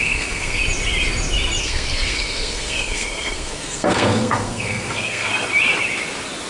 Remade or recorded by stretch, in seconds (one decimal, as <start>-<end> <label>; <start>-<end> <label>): 0.0-0.6 remade; 0.6-1.6 recorded; 1.6-5.3 remade; 5.3-6.5 recorded